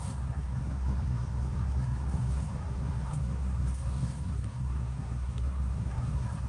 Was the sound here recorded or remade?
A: remade